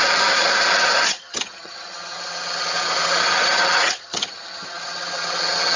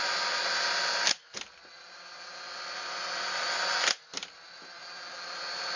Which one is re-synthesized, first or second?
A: first